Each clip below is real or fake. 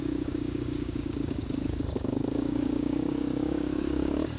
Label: fake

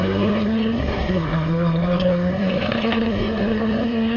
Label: fake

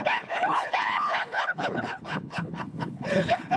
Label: fake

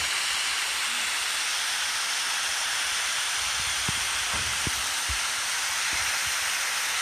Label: real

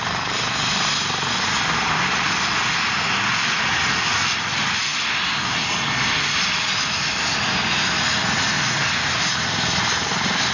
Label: real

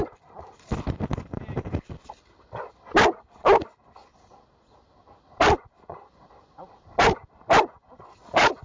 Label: real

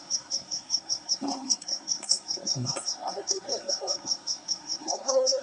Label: fake